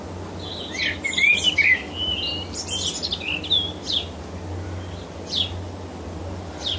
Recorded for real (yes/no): yes